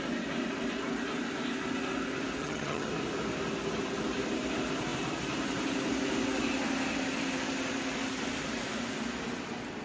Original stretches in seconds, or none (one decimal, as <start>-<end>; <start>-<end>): 0.0-2.4; 2.9-9.8